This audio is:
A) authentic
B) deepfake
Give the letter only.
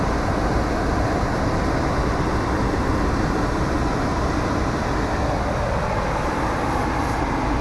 A